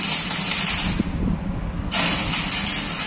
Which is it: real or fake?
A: real